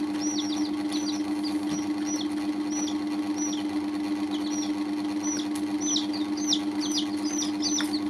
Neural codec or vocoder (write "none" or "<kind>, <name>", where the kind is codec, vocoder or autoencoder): none